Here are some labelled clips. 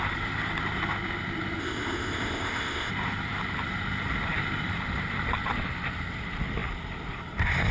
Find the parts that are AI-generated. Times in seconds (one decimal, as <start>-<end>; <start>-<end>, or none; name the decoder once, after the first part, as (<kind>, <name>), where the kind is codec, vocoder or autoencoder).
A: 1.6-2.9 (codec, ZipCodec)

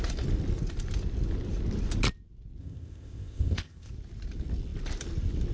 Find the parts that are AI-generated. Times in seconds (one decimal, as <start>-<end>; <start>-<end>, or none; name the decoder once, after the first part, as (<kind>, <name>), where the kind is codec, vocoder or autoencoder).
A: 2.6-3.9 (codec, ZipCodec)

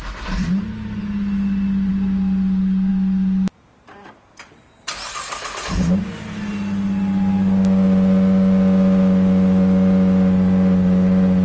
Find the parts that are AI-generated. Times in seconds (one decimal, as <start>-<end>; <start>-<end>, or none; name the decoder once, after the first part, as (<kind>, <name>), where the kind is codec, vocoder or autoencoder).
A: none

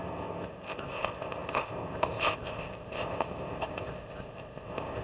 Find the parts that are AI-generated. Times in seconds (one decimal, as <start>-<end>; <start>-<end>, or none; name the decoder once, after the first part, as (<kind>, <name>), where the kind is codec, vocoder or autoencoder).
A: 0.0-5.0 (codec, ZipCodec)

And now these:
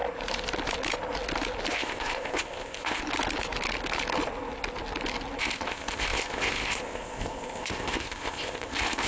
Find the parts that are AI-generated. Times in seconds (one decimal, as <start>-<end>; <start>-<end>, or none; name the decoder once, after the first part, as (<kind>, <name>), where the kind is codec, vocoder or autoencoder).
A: 1.7-3.0 (codec, ZipCodec); 5.4-9.1